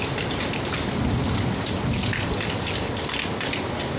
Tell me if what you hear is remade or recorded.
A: recorded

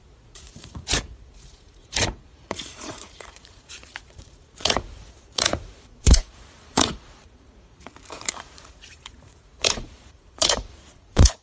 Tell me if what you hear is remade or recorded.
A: remade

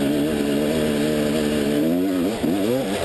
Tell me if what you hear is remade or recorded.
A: recorded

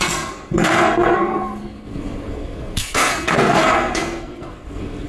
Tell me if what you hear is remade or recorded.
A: remade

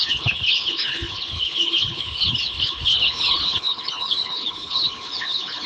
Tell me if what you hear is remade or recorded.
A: remade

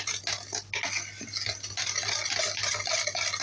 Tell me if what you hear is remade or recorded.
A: recorded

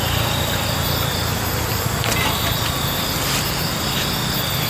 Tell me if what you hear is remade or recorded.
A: recorded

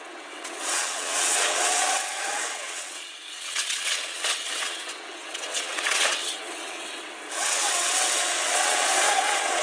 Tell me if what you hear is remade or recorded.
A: remade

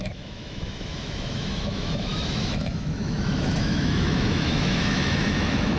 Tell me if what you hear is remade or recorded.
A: remade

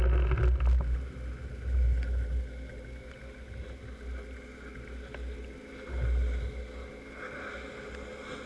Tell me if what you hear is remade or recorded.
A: recorded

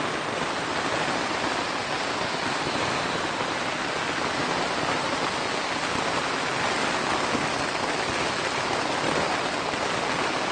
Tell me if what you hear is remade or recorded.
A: recorded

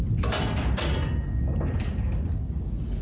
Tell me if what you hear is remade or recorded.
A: recorded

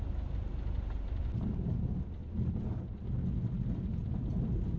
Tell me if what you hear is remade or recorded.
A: recorded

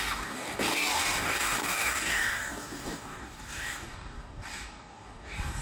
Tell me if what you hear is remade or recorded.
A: remade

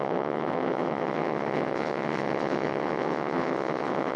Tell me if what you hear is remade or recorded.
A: remade